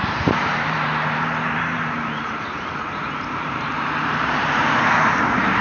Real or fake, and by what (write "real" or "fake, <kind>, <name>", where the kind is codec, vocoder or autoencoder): fake, vocoder, BigVGAN v2